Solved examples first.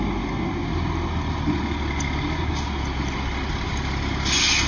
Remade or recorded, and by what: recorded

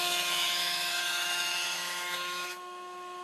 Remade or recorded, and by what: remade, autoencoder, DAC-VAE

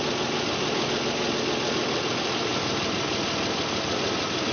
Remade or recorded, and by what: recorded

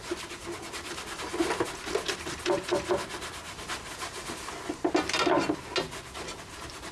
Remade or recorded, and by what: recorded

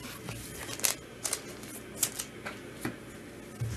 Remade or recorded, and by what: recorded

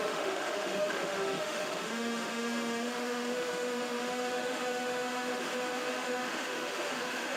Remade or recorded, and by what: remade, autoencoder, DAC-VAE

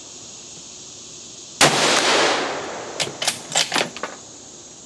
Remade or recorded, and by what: recorded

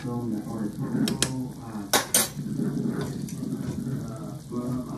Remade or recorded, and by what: recorded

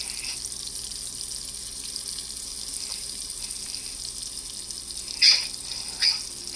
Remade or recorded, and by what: recorded